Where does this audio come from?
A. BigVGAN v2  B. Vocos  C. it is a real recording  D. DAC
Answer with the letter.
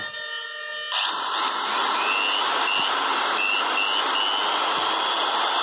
C